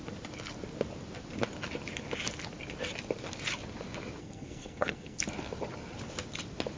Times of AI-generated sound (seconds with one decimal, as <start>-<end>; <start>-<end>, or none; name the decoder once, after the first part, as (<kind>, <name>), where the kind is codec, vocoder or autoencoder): 4.2-5.2 (codec, SNAC)